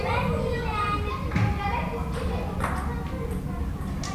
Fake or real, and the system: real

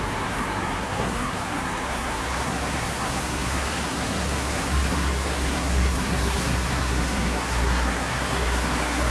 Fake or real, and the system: fake, codec, SNAC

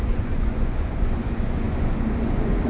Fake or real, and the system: fake, vocoder, Vocos